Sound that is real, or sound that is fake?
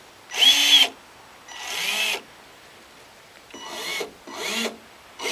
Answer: real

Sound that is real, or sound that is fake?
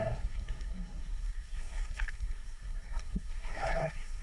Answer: fake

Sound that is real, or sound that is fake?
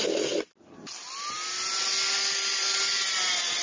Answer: real